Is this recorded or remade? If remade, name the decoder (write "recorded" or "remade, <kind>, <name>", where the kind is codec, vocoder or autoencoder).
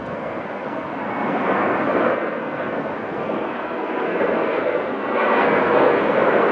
remade, codec, SNAC